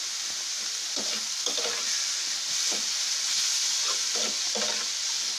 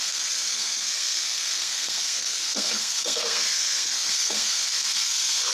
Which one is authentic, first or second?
first